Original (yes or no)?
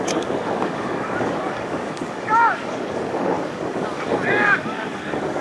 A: no